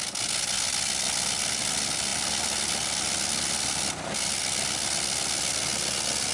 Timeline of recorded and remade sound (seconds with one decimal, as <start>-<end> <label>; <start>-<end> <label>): 0.0-6.3 recorded